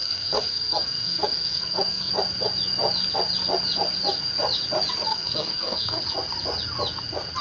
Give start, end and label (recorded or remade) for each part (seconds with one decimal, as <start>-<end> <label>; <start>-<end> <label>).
0.0-2.1 remade; 2.1-5.1 recorded; 5.1-6.0 remade; 6.0-7.4 recorded